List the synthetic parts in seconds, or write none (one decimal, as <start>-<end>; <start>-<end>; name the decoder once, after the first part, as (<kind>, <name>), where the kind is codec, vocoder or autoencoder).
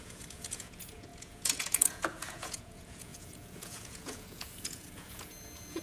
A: 0.0-5.8 (vocoder, Vocos)